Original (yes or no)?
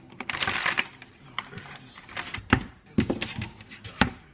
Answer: no